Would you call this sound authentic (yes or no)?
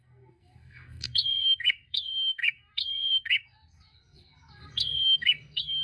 no